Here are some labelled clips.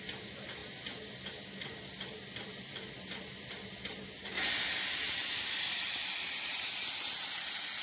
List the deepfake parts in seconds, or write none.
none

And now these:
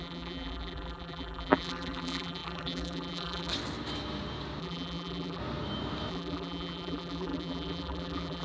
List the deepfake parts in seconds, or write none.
0.0-3.5 (vocoder, BigVGAN v2); 4.6-5.4; 6.1-8.4

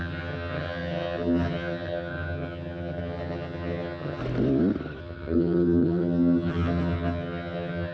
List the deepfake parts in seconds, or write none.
0.0-4.2 (vocoder, HiFi-GAN); 5.0-7.9

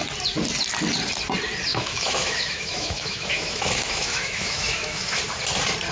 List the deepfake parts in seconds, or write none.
1.7-5.2 (autoencoder, DAC-VAE)

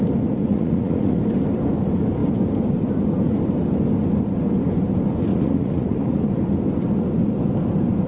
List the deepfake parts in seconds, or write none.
0.4-1.2 (vocoder, Vocos); 5.3-6.3

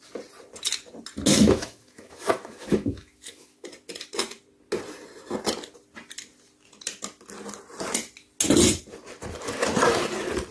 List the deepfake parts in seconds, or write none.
1.3-3.7 (autoencoder, DAC-VAE)